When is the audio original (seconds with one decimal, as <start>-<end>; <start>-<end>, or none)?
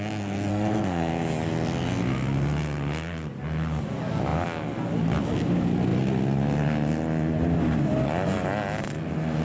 0.0-0.5; 1.1-9.4